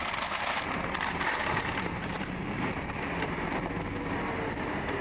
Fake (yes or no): yes